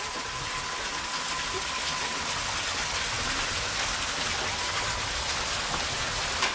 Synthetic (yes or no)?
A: no